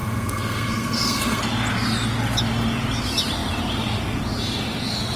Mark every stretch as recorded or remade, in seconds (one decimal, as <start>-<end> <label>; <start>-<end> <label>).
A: 0.0-1.4 remade; 1.4-5.2 recorded